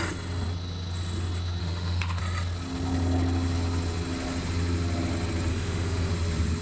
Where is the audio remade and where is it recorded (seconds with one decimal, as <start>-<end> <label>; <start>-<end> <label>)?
0.0-1.6 recorded; 1.6-2.2 remade; 2.2-5.5 recorded; 5.5-6.1 remade; 6.1-6.6 recorded